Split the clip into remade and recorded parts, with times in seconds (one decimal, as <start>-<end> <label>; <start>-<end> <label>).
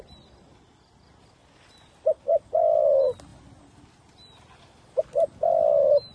0.0-6.1 recorded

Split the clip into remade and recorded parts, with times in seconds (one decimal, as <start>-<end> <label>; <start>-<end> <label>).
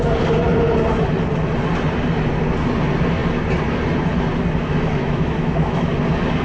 0.0-4.6 recorded; 4.6-5.9 remade; 5.9-6.4 recorded